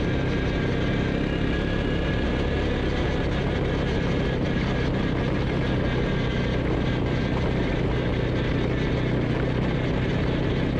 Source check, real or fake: real